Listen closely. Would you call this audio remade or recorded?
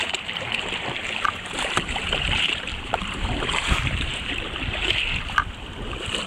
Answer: remade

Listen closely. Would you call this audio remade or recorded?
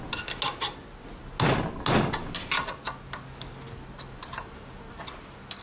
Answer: recorded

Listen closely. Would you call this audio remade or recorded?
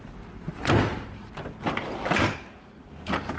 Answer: recorded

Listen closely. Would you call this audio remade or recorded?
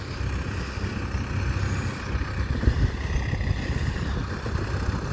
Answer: recorded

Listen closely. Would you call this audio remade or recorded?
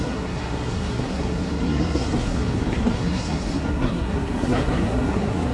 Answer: remade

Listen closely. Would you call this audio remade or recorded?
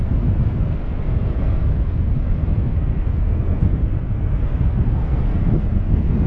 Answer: remade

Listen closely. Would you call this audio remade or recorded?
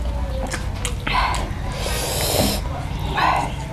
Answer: recorded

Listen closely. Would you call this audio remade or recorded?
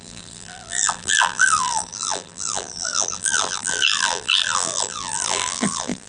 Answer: remade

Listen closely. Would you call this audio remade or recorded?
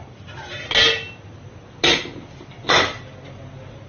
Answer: recorded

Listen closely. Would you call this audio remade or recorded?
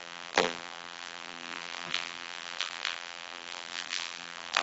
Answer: remade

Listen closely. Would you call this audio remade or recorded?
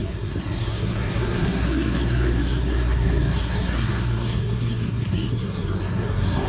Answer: remade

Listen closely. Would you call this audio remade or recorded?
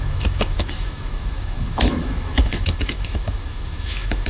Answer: remade